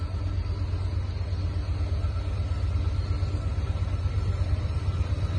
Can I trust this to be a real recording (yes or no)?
yes